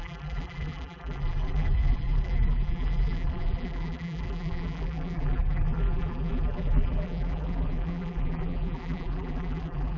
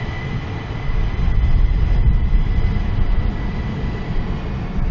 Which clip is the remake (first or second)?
first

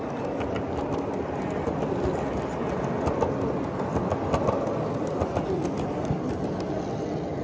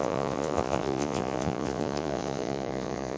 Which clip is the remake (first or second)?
second